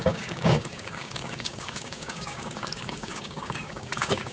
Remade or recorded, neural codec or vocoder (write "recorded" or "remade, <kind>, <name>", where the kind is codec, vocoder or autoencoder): remade, codec, DAC